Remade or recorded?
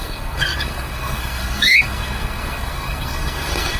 remade